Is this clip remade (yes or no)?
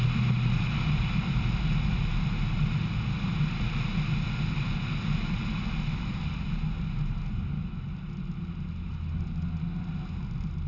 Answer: no